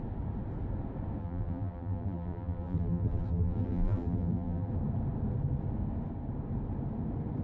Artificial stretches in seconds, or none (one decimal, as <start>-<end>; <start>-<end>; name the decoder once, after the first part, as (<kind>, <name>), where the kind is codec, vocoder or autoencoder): 1.2-4.7 (vocoder, BigVGAN v2)